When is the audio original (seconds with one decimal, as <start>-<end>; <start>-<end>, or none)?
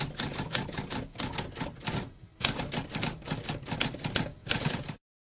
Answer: 0.0-4.4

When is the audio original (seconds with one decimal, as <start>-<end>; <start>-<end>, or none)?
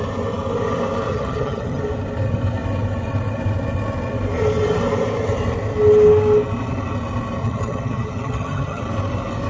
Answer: 0.0-1.1; 1.8-7.4; 8.8-9.5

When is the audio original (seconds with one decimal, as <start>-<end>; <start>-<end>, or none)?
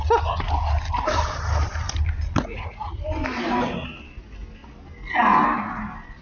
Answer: 0.0-2.4; 3.0-6.2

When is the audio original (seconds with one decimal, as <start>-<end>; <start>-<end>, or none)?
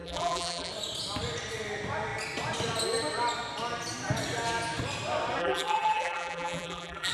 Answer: 0.7-5.4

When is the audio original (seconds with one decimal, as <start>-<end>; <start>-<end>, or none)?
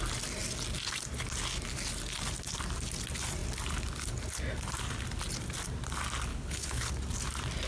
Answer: 0.0-6.3; 6.9-7.7